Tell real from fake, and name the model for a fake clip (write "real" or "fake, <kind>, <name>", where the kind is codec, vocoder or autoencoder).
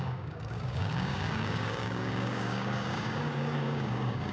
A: fake, codec, DAC